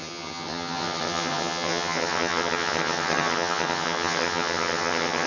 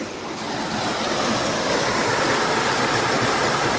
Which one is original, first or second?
second